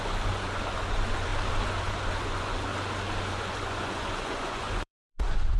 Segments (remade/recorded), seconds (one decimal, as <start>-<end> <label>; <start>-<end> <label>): 0.0-1.3 remade; 1.3-1.8 recorded; 1.8-2.7 remade; 2.7-3.3 recorded; 3.3-5.6 remade